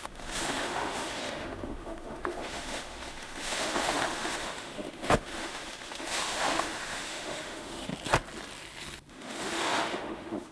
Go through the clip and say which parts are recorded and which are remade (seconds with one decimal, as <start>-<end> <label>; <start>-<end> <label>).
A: 0.0-7.9 remade; 7.9-9.1 recorded; 9.1-10.5 remade